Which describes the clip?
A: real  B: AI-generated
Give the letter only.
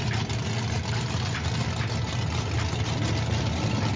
A